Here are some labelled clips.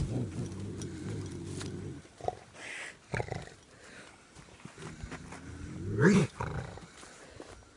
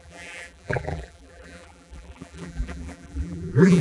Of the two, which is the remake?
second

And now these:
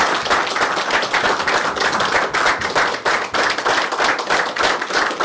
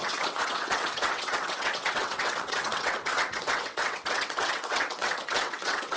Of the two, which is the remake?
second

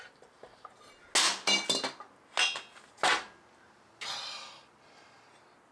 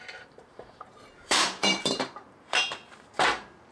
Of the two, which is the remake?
second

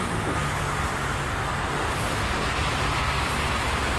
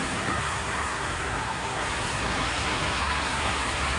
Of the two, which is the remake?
second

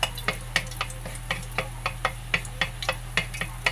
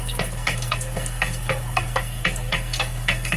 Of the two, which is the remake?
second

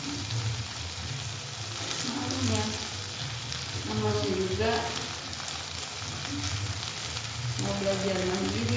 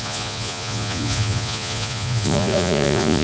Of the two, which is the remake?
second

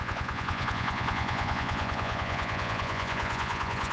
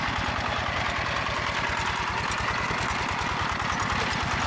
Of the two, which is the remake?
first